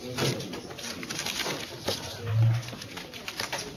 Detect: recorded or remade recorded